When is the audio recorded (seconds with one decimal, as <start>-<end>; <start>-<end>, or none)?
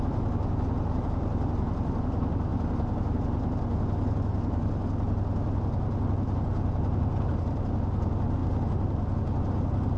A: 0.0-10.0